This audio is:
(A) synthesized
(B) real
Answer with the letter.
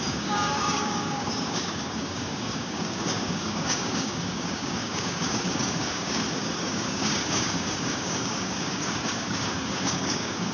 A